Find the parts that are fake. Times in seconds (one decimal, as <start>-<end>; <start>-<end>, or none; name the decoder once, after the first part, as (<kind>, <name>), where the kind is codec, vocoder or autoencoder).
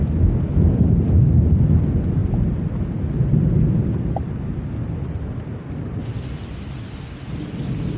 none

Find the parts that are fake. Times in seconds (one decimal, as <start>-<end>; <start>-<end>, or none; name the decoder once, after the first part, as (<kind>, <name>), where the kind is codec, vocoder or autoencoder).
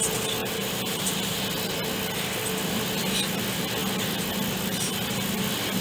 0.4-1.4 (vocoder, BigVGAN v2)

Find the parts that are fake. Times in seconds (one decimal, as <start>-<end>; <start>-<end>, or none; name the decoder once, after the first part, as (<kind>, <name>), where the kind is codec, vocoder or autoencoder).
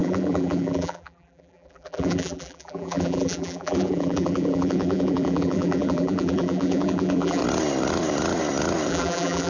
0.0-7.4 (vocoder, BigVGAN v2); 8.9-9.5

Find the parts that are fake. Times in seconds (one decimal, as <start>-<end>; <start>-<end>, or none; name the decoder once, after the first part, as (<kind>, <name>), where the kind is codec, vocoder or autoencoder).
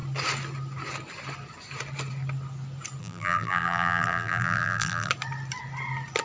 3.0-5.1 (vocoder, BigVGAN v2)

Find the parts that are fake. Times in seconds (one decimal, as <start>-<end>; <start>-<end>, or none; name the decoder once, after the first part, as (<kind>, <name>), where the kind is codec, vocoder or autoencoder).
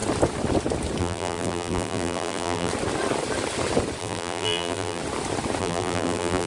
1.0-2.7 (vocoder, BigVGAN v2); 4.0-5.0; 5.6-6.5